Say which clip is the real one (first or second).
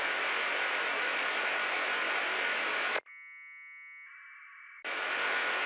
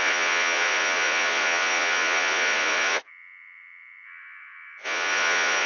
first